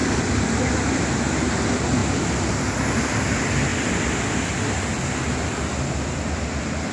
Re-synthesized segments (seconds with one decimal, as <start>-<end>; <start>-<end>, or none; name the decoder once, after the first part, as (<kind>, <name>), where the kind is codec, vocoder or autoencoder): none